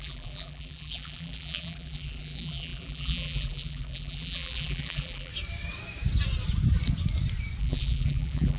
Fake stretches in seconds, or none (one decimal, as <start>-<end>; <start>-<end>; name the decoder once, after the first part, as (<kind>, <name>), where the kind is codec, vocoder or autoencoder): 0.0-5.3 (vocoder, BigVGAN v2); 7.6-8.6